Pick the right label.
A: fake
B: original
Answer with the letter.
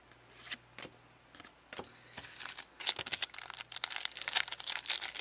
B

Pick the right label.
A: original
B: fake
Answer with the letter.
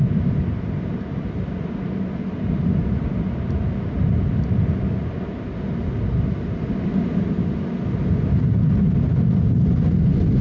A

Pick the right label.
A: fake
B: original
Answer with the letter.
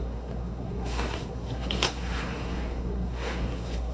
A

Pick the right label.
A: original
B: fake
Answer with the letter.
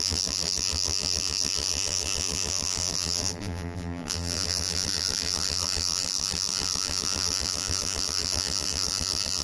B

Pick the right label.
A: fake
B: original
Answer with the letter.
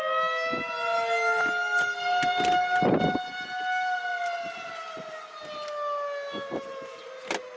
B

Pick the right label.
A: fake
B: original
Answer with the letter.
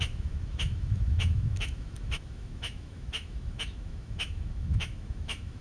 A